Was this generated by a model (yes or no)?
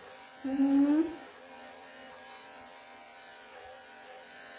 yes